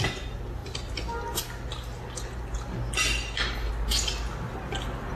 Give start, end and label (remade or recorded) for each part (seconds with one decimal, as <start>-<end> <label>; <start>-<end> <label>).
0.0-5.2 recorded